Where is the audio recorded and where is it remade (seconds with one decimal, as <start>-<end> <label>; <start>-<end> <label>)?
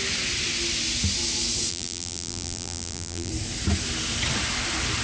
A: 0.0-1.7 recorded; 1.7-3.3 remade; 3.3-5.0 recorded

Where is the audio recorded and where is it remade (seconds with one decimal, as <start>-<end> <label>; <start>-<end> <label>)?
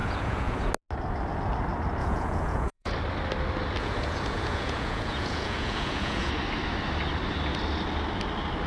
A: 0.0-0.7 remade; 0.7-2.0 recorded; 2.0-2.9 remade; 2.9-3.8 recorded; 3.8-6.3 remade; 6.3-8.7 recorded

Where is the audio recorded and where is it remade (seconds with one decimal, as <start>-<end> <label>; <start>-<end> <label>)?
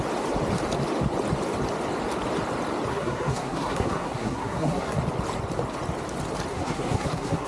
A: 0.0-2.9 recorded; 2.9-5.0 remade; 5.0-6.5 recorded; 6.5-7.5 remade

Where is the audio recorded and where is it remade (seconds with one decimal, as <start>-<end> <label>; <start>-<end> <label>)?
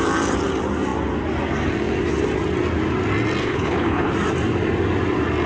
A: 0.0-3.4 recorded; 3.4-4.1 remade; 4.1-5.5 recorded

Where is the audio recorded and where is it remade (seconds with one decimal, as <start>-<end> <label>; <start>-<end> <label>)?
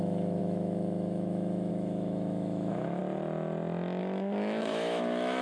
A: 0.0-3.0 remade; 3.0-4.0 recorded; 4.0-5.4 remade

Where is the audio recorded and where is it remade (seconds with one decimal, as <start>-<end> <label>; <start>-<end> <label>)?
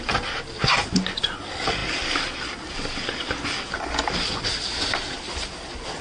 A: 0.0-6.0 recorded